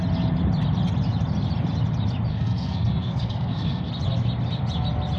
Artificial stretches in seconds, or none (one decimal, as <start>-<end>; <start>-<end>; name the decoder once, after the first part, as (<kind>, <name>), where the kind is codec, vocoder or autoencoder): 2.3-3.9 (codec, SNAC)